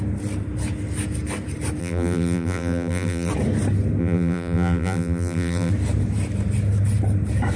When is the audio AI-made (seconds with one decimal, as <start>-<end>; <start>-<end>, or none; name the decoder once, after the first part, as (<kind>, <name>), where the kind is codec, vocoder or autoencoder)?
1.8-3.3 (vocoder, BigVGAN v2); 4.0-5.7